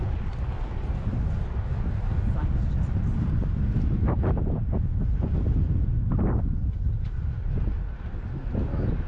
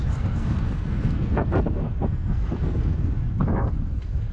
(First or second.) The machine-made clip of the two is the second